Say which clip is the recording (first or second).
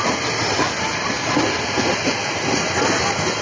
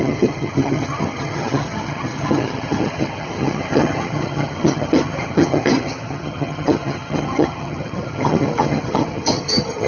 first